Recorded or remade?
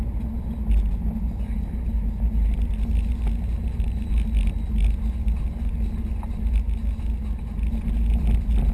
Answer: recorded